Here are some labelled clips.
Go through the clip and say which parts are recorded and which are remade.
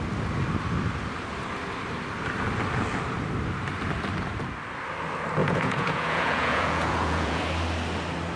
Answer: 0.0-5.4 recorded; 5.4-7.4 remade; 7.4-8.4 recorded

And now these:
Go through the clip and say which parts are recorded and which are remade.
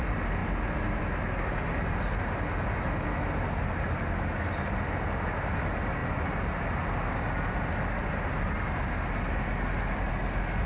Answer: 0.0-10.7 recorded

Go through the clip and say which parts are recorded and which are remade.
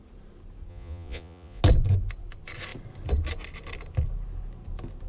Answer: 0.0-0.7 recorded; 0.7-1.6 remade; 1.6-5.1 recorded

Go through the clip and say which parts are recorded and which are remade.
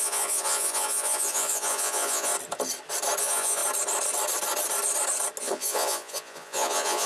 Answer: 0.0-2.3 remade; 2.3-3.2 recorded; 3.2-3.6 remade; 3.6-5.4 recorded; 5.4-7.1 remade